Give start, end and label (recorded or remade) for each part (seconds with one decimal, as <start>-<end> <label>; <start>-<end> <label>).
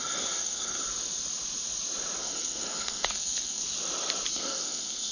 0.0-0.8 remade; 0.8-2.2 recorded; 2.2-3.6 remade; 3.6-4.3 recorded; 4.3-5.1 remade